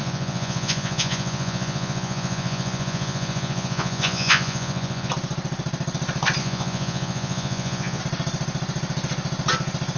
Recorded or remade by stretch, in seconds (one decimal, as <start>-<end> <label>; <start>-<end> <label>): 0.0-5.1 remade; 5.1-6.4 recorded; 6.4-8.0 remade; 8.0-10.0 recorded